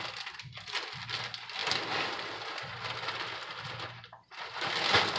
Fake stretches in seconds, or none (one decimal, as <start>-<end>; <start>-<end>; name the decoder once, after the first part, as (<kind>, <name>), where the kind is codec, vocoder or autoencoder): none